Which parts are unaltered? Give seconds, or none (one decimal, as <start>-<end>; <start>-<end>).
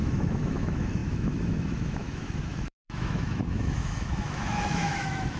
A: none